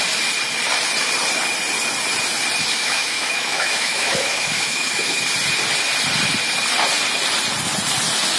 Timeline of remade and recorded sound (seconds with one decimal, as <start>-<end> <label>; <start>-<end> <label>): 0.0-2.7 recorded; 2.7-5.2 remade; 5.2-8.4 recorded